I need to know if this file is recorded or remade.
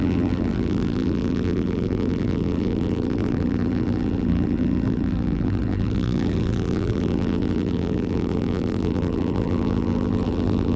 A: remade